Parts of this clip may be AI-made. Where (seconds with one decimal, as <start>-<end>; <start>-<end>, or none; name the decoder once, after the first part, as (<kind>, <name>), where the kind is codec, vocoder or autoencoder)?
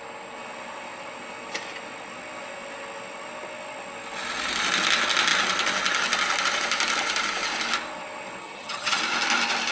8.4-9.0 (vocoder, HiFi-GAN)